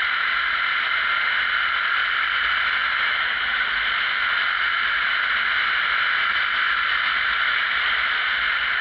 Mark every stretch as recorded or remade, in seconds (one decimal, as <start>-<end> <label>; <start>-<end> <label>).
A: 0.0-8.8 recorded